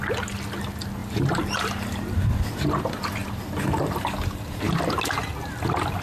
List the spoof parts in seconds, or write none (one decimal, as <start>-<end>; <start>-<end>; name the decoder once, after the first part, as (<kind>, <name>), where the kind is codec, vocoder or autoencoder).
1.0-1.6 (vocoder, BigVGAN v2); 3.2-4.6